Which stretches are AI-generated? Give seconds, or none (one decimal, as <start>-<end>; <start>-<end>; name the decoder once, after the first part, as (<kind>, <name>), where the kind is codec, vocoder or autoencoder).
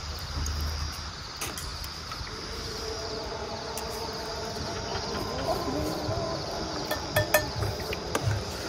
none